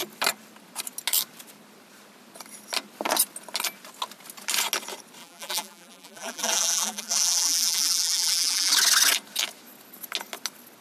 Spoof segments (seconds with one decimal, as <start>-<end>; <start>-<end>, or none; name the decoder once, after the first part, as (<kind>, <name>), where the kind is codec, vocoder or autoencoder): 5.2-8.7 (vocoder, BigVGAN v2)